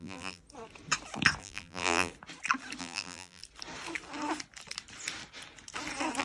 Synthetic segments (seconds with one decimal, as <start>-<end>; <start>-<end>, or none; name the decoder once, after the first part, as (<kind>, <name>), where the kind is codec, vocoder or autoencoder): 0.0-0.4 (vocoder, BigVGAN v2); 1.4-2.1; 2.8-3.4